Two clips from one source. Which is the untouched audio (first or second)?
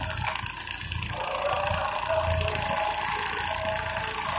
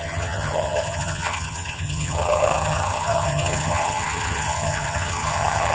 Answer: first